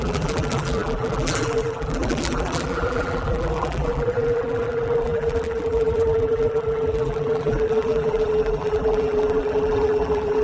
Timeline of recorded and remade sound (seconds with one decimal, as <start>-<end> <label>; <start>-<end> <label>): 0.0-10.4 remade